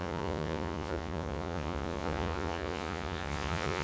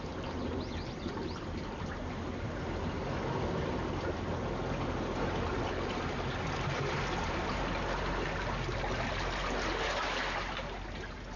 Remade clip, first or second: first